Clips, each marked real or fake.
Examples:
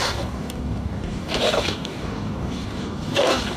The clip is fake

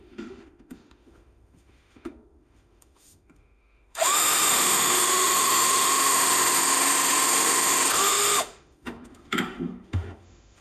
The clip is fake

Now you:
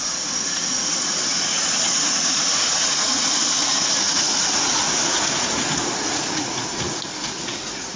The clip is fake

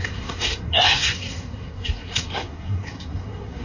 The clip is fake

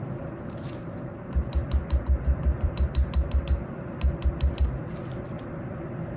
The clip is fake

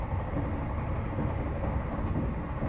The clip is real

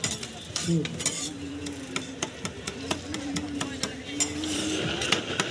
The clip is real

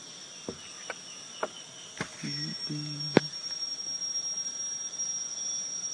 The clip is real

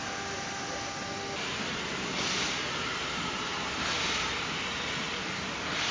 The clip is real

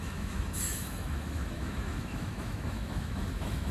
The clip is fake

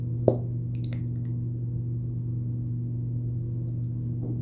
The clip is real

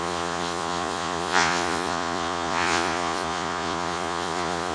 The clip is fake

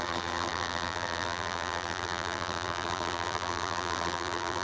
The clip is fake